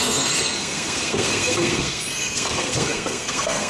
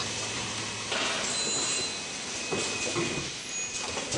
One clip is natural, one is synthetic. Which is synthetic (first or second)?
first